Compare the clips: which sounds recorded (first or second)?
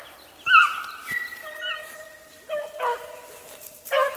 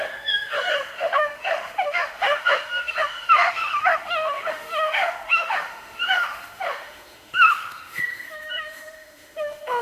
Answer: first